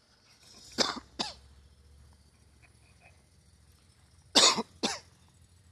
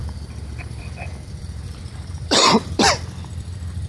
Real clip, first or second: first